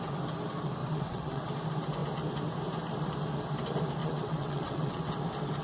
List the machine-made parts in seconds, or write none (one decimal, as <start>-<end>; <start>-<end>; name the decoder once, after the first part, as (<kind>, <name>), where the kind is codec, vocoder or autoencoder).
0.8-1.5 (vocoder, WaveNeXt); 4.0-5.1